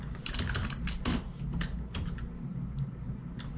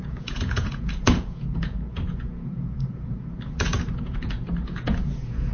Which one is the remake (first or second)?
second